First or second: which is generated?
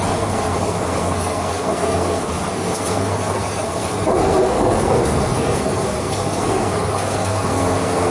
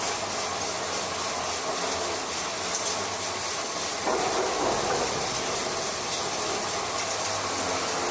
first